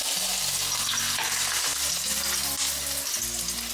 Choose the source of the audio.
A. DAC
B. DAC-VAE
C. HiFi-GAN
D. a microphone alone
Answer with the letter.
D